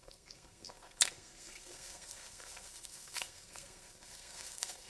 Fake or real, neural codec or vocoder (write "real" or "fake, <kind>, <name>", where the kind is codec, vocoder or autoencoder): fake, codec, SNAC